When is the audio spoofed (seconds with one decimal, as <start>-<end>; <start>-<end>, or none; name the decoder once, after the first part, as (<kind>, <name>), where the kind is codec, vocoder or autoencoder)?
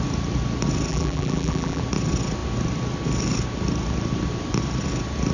0.9-1.8 (vocoder, BigVGAN v2)